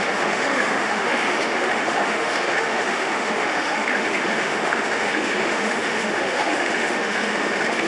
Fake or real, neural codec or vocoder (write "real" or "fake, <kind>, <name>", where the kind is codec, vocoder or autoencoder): fake, autoencoder, DAC-VAE